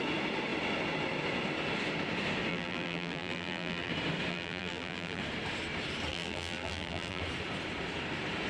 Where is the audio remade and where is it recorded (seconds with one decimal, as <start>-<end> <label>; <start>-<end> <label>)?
0.0-2.5 recorded; 2.5-3.9 remade; 3.9-4.3 recorded; 4.3-5.2 remade; 5.2-6.1 recorded; 6.1-7.2 remade; 7.2-8.5 recorded